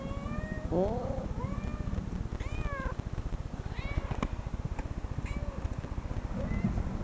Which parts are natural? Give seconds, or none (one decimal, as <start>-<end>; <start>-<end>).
0.0-7.0